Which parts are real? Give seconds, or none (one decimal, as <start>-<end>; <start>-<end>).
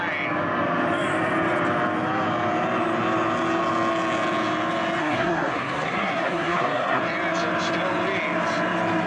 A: 0.0-5.0; 7.0-9.1